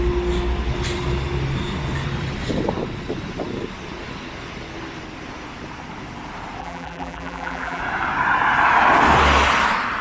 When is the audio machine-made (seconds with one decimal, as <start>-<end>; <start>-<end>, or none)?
6.6-7.8